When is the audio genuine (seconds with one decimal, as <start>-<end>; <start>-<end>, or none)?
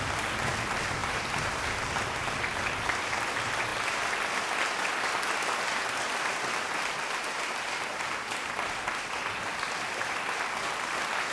0.0-1.0; 1.6-6.3; 8.5-11.3